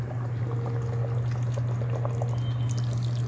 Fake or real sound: real